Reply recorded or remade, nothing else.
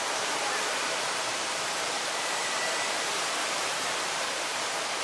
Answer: remade